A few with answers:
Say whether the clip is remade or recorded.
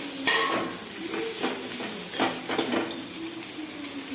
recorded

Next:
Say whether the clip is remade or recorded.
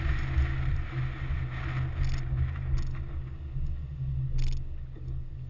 recorded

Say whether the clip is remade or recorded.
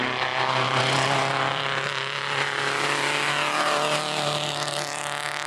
remade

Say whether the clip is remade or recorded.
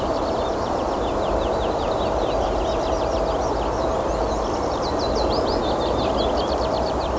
recorded